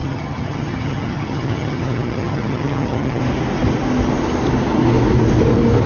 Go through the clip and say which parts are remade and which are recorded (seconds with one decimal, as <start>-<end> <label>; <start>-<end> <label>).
0.0-3.2 remade; 3.2-5.9 recorded